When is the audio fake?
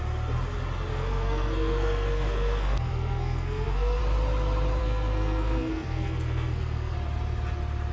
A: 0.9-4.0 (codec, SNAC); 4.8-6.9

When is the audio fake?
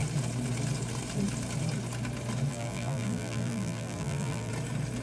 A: 2.5-4.5 (vocoder, BigVGAN v2)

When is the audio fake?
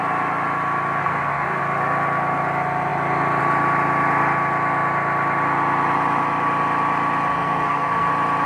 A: 1.0-1.6 (codec, SNAC); 7.3-8.1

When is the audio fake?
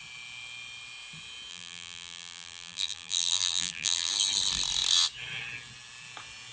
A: 1.5-4.1 (vocoder, BigVGAN v2)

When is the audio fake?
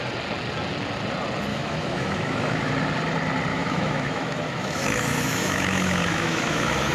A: 1.5-2.7 (autoencoder, DAC-VAE); 3.5-6.9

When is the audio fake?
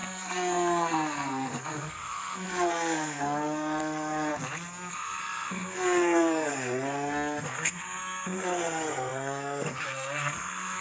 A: 0.0-4.3 (codec, SNAC); 4.9-10.8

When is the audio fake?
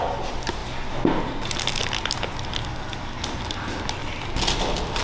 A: 2.6-3.2 (codec, DAC)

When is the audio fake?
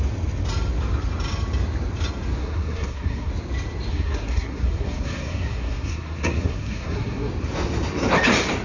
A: 2.4-3.3 (codec, SNAC); 3.9-7.3